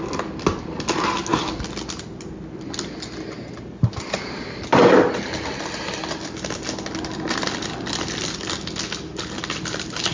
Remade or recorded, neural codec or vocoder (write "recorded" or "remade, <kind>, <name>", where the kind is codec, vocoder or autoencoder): recorded